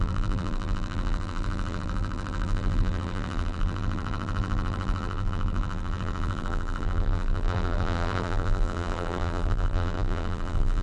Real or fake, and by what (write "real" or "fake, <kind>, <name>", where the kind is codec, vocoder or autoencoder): fake, vocoder, BigVGAN v2